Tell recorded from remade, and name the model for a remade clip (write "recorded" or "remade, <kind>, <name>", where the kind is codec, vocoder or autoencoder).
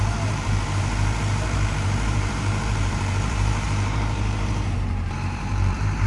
remade, vocoder, BigVGAN v2